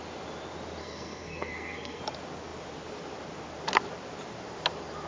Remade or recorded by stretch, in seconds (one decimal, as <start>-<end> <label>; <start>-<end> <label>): 0.0-0.8 recorded; 0.8-2.0 remade; 2.0-5.1 recorded